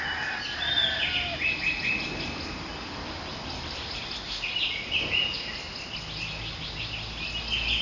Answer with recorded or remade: recorded